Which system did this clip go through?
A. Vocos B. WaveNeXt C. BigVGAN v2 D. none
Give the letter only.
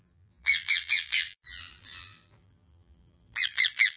C